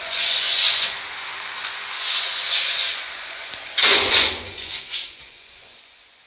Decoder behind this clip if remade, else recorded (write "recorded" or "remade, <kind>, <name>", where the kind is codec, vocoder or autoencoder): remade, vocoder, Vocos